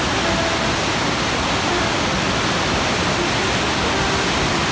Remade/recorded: recorded